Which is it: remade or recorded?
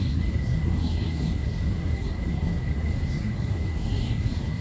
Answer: remade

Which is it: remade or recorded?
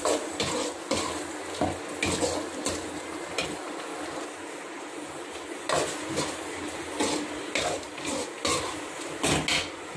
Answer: recorded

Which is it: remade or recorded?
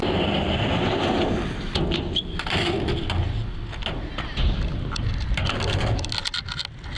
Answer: recorded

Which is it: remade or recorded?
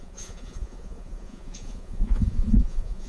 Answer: remade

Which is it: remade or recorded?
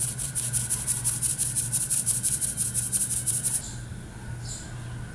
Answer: recorded